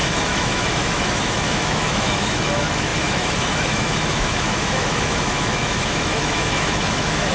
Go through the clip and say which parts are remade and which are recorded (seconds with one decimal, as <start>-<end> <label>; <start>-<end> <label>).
0.0-7.3 remade